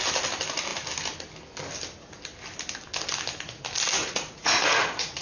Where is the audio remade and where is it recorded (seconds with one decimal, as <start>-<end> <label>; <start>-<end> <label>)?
0.0-4.0 recorded; 4.0-5.2 remade